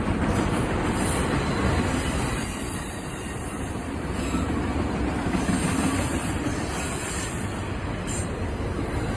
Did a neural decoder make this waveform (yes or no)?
yes